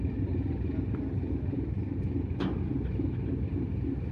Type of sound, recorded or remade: recorded